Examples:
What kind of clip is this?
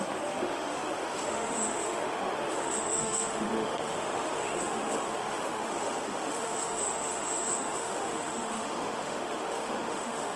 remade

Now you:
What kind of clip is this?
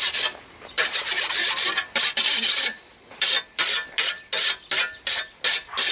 recorded